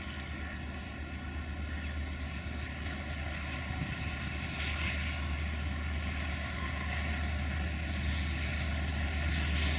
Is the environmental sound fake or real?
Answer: real